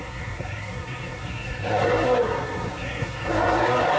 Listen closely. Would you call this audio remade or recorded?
remade